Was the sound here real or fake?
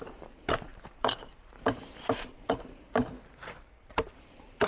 fake